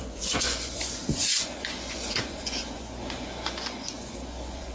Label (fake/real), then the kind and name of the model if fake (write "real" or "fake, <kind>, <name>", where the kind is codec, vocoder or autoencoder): fake, vocoder, Vocos